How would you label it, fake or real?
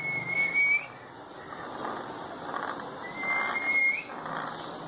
real